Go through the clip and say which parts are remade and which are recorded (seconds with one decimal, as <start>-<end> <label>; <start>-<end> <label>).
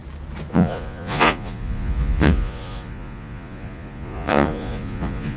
0.0-0.5 recorded; 0.5-5.4 remade